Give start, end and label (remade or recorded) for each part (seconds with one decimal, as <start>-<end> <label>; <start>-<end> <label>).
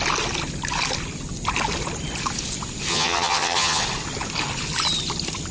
0.0-2.9 recorded; 2.9-3.8 remade; 3.8-5.5 recorded